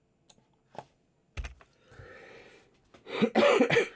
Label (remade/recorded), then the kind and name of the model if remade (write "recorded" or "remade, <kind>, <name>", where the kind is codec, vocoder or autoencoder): recorded